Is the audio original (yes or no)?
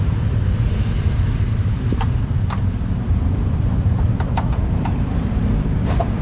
no